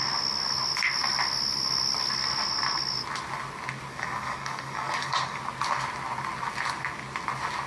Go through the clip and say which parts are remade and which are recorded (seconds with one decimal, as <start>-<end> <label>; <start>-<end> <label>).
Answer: 0.0-3.9 recorded; 3.9-5.4 remade; 5.4-7.7 recorded